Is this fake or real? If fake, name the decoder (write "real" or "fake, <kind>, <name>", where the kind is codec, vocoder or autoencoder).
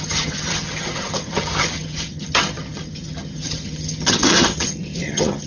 fake, vocoder, HiFi-GAN